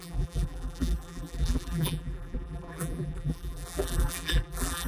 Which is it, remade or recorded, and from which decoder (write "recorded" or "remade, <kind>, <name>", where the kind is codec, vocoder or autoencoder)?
remade, vocoder, BigVGAN v2